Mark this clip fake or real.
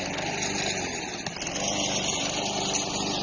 real